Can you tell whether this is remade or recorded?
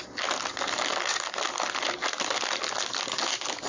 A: recorded